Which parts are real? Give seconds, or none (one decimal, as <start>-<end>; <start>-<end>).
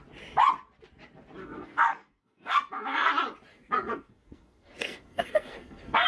0.0-1.4; 3.1-3.5